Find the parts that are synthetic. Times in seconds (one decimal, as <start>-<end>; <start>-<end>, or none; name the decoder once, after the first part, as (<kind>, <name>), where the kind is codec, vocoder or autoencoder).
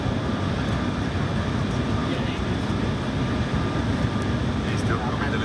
2.0-4.9 (vocoder, BigVGAN v2)